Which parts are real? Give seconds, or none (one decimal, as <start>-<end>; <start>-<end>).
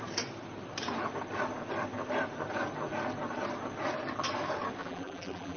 0.0-4.8